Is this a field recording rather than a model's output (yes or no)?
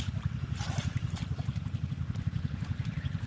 no